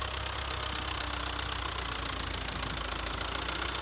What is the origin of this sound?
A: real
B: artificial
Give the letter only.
A